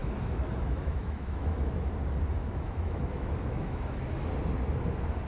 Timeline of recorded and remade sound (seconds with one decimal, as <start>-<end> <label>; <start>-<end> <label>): 0.0-1.9 remade; 1.9-2.4 recorded; 2.4-4.1 remade; 4.1-5.3 recorded